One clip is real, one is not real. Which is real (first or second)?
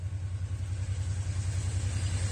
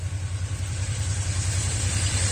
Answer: first